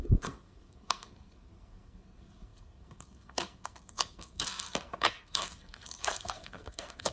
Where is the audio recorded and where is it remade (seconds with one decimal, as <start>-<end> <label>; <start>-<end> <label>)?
0.0-7.1 remade